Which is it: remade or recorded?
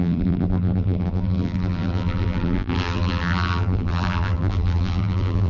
remade